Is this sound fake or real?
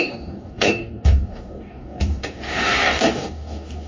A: fake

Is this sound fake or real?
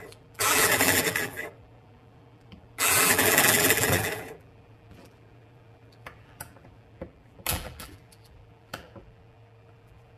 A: fake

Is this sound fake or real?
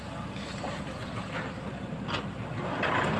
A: real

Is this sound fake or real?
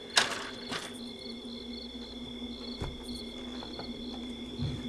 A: real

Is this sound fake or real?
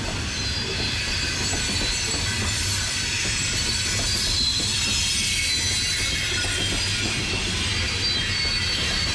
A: real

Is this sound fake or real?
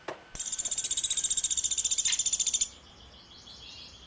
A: real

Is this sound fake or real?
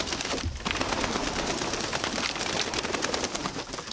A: fake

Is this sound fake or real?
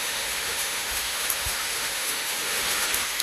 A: fake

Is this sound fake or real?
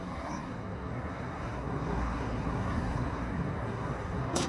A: fake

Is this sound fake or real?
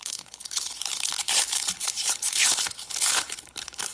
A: fake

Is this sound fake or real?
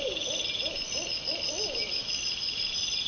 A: real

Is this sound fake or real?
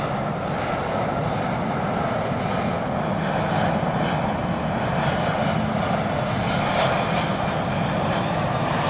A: real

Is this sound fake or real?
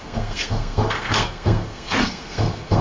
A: fake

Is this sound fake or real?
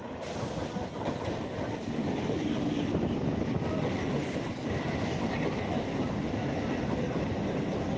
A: fake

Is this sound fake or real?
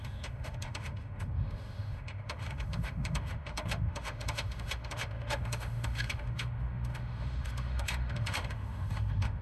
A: fake